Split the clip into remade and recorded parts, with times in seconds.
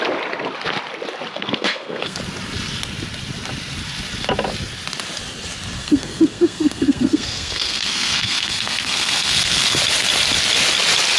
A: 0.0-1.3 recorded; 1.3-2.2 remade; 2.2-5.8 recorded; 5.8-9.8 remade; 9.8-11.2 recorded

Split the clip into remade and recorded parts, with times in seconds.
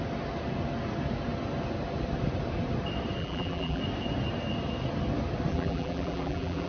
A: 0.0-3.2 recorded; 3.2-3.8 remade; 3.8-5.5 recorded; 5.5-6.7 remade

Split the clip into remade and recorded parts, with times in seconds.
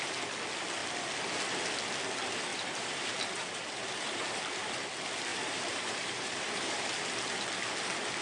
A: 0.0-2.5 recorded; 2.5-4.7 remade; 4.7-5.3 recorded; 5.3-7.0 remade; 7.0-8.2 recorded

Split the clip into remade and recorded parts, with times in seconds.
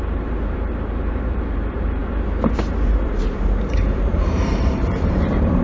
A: 0.0-2.0 remade; 2.0-3.1 recorded; 3.1-5.6 remade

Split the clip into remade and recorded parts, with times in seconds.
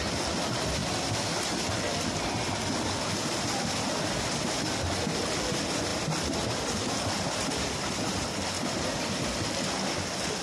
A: 0.0-10.4 recorded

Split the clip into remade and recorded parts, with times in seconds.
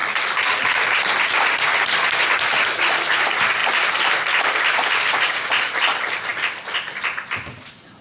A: 0.0-1.2 remade; 1.2-3.6 recorded; 3.6-4.9 remade; 4.9-8.0 recorded